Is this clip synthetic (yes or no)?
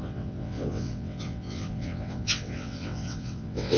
yes